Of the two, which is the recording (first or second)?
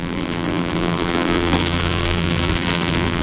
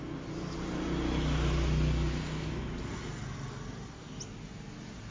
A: second